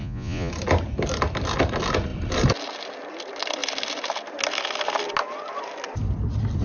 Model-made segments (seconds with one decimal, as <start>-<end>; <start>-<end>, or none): 0.0-0.5